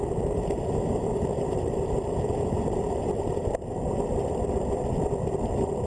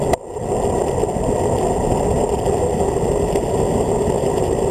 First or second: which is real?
second